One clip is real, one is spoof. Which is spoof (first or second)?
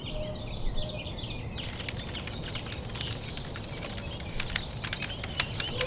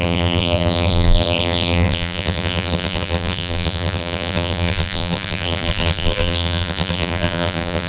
second